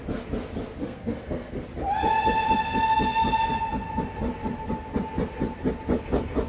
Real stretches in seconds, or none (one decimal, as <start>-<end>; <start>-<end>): 0.0-0.8; 1.6-6.5